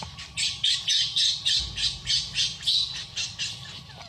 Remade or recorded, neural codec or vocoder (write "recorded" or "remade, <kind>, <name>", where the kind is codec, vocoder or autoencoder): recorded